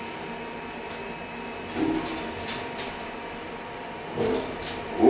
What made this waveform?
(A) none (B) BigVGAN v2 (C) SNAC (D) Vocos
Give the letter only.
A